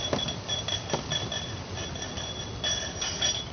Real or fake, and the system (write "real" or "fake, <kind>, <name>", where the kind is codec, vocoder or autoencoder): real